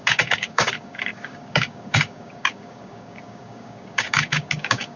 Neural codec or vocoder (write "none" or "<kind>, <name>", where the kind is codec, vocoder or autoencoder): codec, DAC